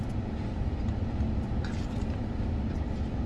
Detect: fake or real real